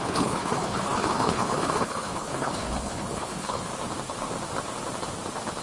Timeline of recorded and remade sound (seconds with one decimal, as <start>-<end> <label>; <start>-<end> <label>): 0.0-3.7 remade; 3.7-5.6 recorded